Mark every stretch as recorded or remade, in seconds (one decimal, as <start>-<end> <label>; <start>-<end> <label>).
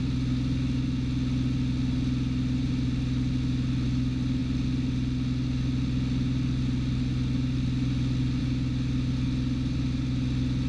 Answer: 0.0-10.7 recorded